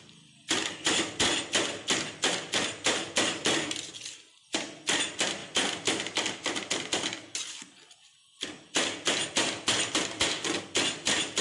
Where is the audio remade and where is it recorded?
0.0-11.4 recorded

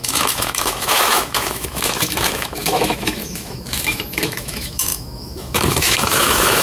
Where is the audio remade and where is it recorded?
0.0-6.6 remade